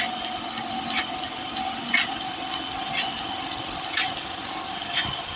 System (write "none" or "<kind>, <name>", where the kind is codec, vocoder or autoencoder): none